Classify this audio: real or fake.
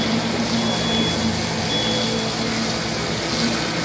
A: real